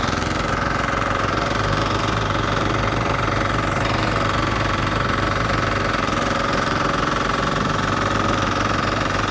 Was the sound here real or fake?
fake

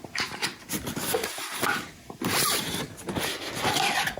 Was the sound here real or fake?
fake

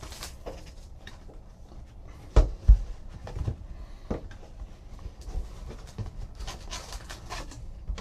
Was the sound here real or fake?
fake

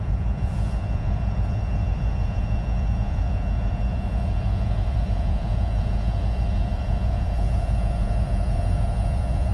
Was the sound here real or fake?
fake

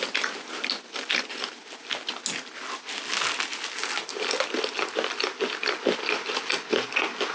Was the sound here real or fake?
real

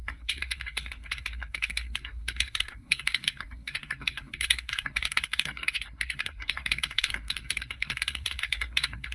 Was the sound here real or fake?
fake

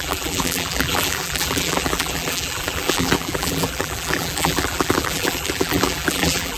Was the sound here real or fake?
fake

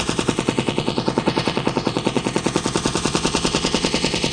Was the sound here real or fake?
fake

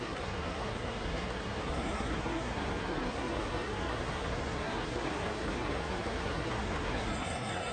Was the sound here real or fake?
fake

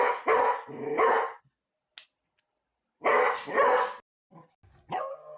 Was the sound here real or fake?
real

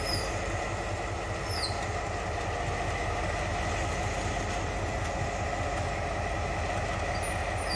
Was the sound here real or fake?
real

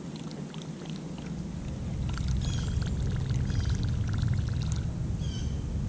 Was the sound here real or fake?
real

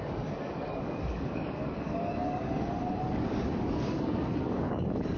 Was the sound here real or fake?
fake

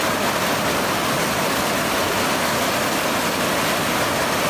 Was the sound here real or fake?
real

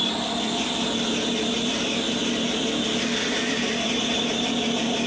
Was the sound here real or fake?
fake